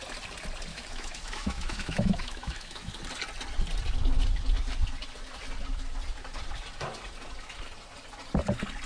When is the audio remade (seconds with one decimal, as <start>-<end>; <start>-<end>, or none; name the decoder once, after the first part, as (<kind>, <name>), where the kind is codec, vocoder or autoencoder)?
0.7-2.9 (autoencoder, DAC-VAE)